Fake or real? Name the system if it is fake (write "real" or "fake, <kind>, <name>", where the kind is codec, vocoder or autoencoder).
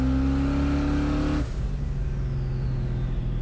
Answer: real